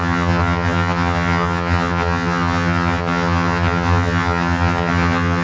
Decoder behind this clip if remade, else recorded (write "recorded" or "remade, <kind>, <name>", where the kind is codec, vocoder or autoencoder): remade, vocoder, HiFi-GAN